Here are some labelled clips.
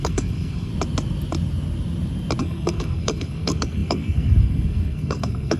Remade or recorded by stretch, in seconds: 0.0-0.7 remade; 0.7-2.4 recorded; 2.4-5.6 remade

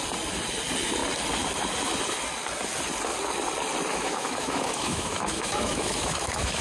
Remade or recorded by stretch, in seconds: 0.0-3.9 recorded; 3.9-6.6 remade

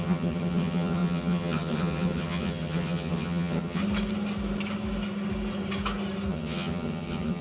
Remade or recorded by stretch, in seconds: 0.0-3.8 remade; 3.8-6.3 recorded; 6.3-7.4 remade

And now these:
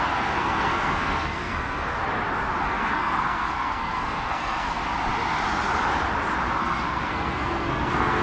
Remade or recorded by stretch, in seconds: 0.0-2.0 remade; 2.0-2.6 recorded; 2.6-4.8 remade; 4.8-6.6 recorded; 6.6-8.2 remade

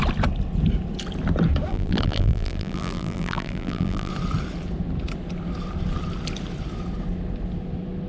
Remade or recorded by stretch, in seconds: 0.0-1.7 recorded; 1.7-4.1 remade; 4.1-8.1 recorded